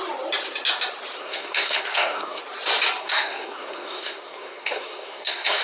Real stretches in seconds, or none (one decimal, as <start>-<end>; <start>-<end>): 0.0-1.2; 2.4-3.0